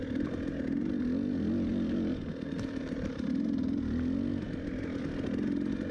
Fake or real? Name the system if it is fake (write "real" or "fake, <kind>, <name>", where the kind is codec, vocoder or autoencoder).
real